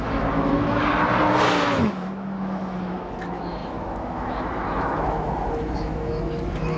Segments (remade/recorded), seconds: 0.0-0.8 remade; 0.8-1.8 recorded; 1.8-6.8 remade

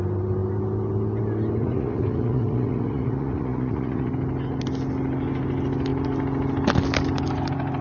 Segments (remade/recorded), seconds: 0.0-1.6 recorded; 1.6-4.1 remade; 4.1-7.8 recorded

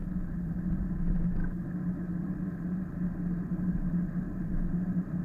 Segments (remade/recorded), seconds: 0.0-5.2 recorded